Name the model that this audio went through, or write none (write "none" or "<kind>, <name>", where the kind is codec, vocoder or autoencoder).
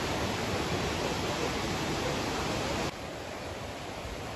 vocoder, BigVGAN v2